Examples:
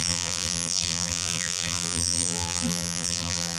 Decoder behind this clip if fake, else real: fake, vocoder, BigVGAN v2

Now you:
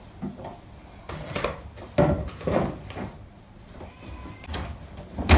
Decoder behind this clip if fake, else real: real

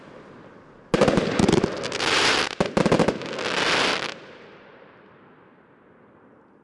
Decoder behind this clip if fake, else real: real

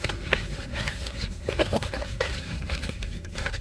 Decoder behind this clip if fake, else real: fake, codec, SNAC